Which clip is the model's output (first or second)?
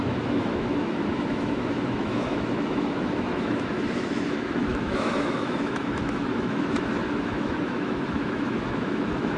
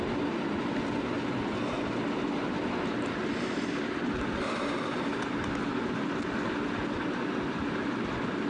first